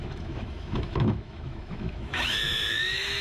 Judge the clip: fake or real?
fake